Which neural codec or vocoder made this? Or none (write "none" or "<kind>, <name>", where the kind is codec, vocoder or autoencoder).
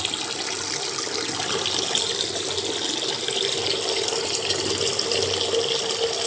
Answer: none